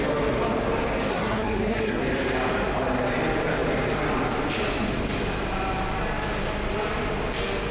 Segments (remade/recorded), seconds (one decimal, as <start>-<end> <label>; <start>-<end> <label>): 0.0-1.1 recorded; 1.1-2.0 remade; 2.0-7.7 recorded